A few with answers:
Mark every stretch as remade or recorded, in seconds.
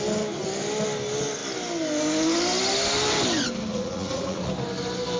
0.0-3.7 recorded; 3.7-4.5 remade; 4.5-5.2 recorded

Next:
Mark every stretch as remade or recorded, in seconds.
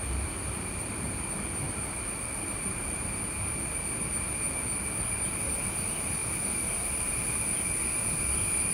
0.0-8.7 recorded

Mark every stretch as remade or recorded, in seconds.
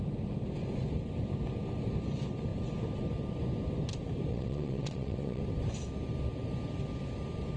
0.0-4.3 recorded; 4.3-5.4 remade; 5.4-7.6 recorded